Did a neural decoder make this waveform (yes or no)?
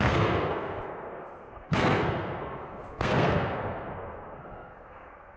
yes